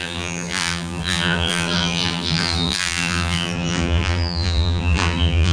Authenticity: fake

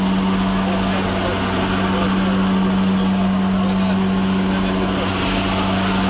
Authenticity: real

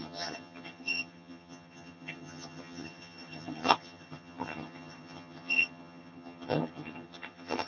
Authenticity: fake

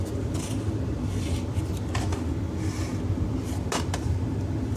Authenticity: real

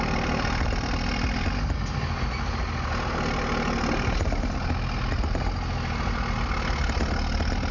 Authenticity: real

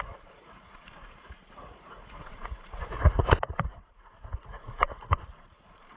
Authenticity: fake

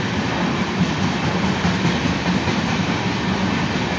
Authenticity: real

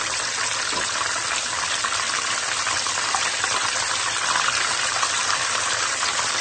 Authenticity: fake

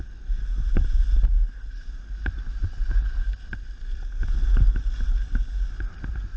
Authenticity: real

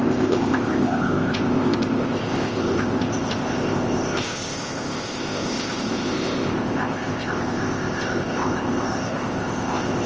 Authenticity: fake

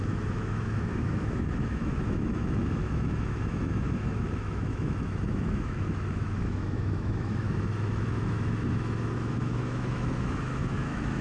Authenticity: fake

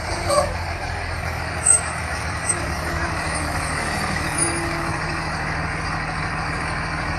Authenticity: fake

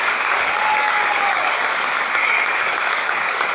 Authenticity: fake